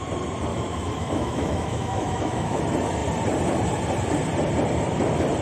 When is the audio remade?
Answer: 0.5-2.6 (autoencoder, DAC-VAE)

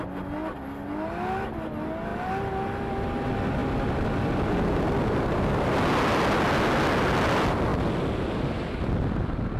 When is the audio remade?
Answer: none

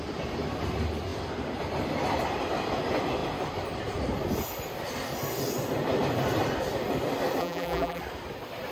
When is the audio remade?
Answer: 7.4-8.0 (vocoder, BigVGAN v2)

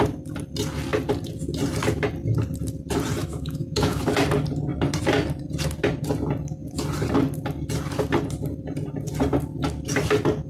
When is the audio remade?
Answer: 3.2-4.0 (autoencoder, DAC-VAE)

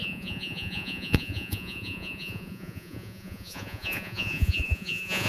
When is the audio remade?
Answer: 0.0-5.3 (vocoder, Vocos)

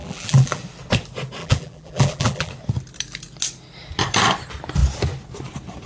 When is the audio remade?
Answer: 0.0-0.6 (vocoder, BigVGAN v2); 1.4-2.5